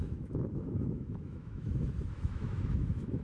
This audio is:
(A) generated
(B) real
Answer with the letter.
A